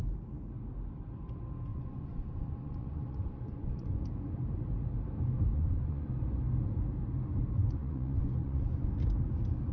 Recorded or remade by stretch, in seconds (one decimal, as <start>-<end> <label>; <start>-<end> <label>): 0.0-1.7 recorded; 1.7-4.0 remade; 4.0-5.5 recorded; 5.5-6.1 remade; 6.1-7.8 recorded; 7.8-8.9 remade; 8.9-9.7 recorded